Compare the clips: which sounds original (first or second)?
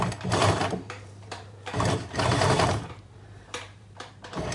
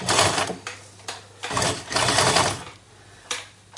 second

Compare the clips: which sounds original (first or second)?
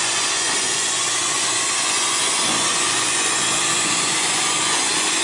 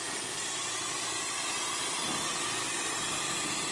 second